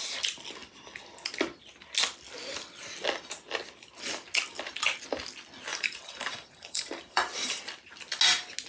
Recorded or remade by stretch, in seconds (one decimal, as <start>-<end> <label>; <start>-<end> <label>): 0.0-5.7 recorded; 5.7-7.6 remade; 7.6-8.7 recorded